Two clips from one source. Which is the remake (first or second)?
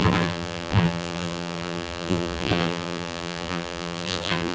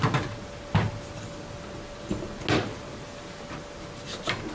first